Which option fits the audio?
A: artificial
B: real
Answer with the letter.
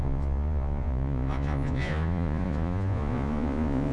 A